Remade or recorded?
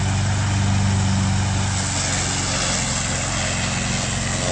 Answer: recorded